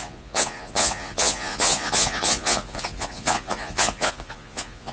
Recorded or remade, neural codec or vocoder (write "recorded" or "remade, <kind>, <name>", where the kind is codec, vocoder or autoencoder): remade, vocoder, Vocos